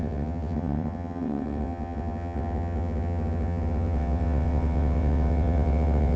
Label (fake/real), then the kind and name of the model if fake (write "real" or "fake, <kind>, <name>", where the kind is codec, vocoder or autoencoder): fake, vocoder, WaveNeXt